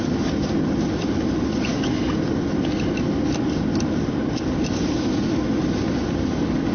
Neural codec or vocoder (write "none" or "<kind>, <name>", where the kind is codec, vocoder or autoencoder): none